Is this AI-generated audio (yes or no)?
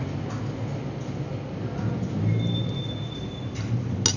no